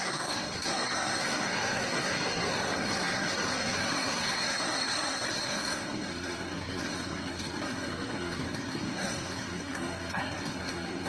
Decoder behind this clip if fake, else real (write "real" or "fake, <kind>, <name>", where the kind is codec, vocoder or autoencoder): fake, codec, SNAC